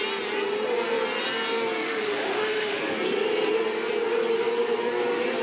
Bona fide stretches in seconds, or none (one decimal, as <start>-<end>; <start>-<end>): 0.0-1.8; 2.8-5.4

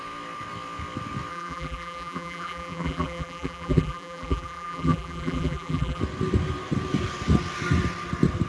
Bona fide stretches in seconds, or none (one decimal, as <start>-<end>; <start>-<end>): 0.0-1.3; 6.0-8.5

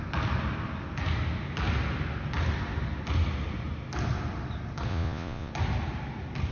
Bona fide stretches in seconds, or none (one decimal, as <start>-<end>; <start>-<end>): 0.0-4.9; 5.5-6.5

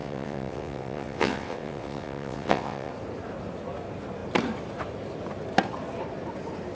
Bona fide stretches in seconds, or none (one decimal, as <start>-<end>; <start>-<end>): 2.9-6.7

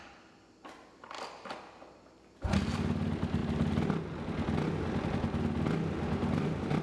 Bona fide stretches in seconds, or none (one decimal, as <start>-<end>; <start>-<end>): 0.0-6.8

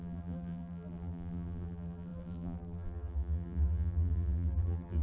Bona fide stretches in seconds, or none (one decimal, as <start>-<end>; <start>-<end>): none